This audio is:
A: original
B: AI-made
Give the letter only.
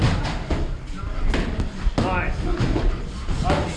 A